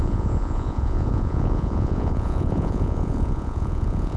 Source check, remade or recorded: remade